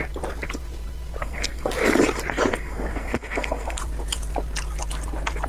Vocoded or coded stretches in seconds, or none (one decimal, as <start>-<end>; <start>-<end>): 1.2-1.7; 2.5-3.8